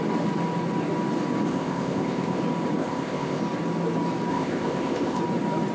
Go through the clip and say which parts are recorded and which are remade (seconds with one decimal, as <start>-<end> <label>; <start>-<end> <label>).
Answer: 0.0-1.5 recorded; 1.5-2.4 remade; 2.4-2.8 recorded; 2.8-3.4 remade; 3.4-4.3 recorded; 4.3-5.2 remade; 5.2-5.7 recorded